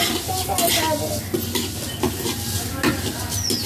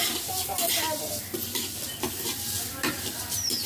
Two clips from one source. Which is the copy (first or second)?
second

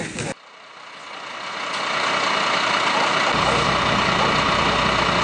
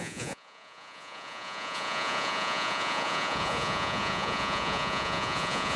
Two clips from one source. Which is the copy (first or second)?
second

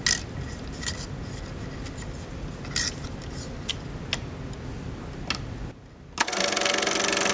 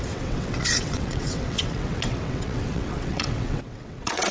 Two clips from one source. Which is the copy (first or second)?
second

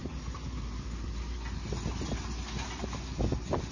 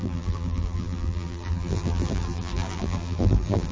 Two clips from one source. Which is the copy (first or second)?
second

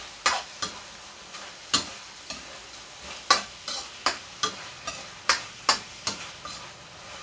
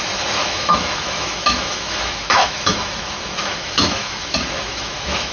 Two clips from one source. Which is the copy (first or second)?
second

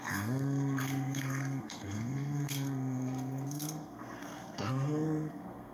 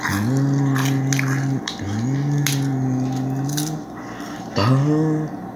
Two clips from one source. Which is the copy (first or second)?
first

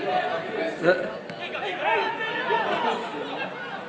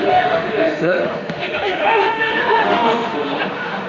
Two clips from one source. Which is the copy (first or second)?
second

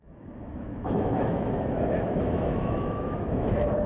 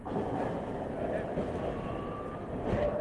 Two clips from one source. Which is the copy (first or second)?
first